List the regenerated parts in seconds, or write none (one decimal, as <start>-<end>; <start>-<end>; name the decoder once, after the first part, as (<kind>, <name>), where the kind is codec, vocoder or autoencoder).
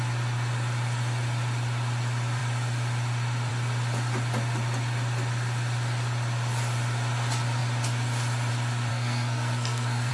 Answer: 8.9-10.1 (codec, SNAC)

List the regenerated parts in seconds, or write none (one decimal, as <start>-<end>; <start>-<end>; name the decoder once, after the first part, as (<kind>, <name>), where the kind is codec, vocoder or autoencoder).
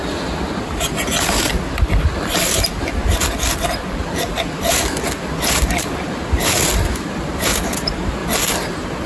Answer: 2.2-8.2 (vocoder, BigVGAN v2)